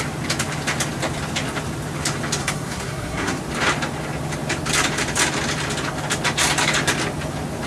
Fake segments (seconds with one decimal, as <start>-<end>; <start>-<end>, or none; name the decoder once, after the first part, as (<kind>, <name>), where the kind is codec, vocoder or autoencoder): 2.4-3.4 (codec, SNAC)